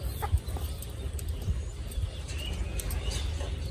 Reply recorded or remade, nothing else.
recorded